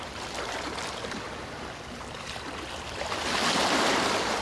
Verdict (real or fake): real